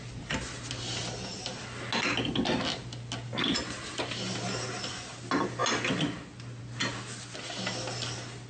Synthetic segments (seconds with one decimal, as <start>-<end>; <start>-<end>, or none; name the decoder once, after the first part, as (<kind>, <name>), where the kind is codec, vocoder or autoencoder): none